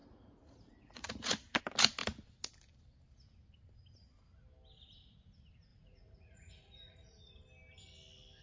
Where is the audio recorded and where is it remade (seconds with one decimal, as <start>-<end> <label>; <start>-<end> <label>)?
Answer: 0.0-1.6 remade; 1.6-5.7 recorded; 5.7-7.3 remade; 7.3-8.4 recorded